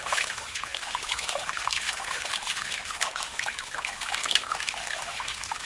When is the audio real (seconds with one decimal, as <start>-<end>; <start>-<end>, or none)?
none